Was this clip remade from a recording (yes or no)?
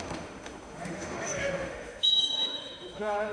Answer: yes